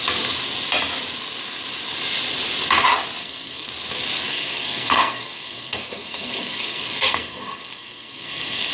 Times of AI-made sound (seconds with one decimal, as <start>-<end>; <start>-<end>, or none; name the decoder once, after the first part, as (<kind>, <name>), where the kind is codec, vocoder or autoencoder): 3.2-3.7 (codec, SNAC); 4.3-8.7